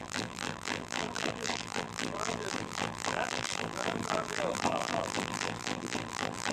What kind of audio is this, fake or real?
fake